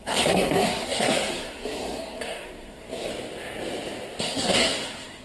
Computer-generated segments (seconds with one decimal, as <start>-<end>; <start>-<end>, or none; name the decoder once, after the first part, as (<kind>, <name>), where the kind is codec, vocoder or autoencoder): 0.0-3.1 (codec, SNAC); 4.2-5.2